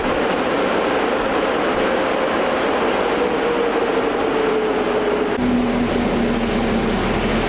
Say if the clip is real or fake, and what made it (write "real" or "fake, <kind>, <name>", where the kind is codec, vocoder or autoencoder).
real